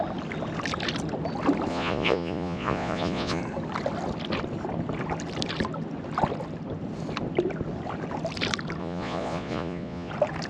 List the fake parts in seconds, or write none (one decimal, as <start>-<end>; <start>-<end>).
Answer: 1.7-3.4; 8.8-10.1